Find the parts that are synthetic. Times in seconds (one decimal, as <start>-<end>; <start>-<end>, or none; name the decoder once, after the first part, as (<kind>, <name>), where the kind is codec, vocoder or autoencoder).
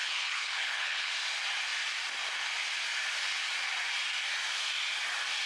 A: 0.0-1.1 (codec, HILCodec)